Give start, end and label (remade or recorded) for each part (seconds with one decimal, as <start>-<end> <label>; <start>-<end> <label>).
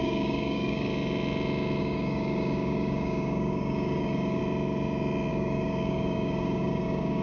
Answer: 0.0-0.9 remade; 0.9-1.8 recorded; 1.8-4.4 remade; 4.4-5.3 recorded; 5.3-7.2 remade